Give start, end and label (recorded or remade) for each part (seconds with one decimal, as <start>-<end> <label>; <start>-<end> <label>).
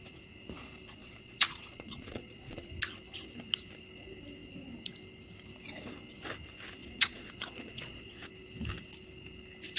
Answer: 0.0-1.0 recorded; 1.0-2.7 remade; 2.7-6.8 recorded; 6.8-8.3 remade; 8.3-9.8 recorded